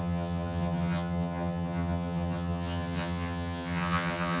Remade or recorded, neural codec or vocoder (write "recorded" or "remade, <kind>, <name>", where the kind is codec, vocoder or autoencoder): remade, vocoder, HiFi-GAN